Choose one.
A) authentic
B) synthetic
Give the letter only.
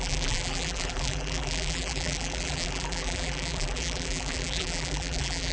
B